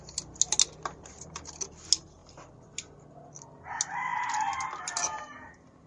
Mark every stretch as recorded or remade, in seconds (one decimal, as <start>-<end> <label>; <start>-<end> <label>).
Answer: 0.0-0.8 recorded; 0.8-1.4 remade; 1.4-5.9 recorded